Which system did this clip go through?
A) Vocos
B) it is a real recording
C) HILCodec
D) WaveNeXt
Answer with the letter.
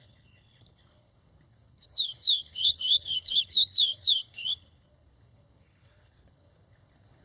C